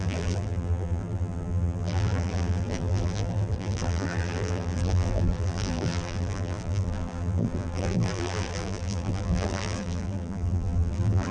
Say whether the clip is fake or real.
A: fake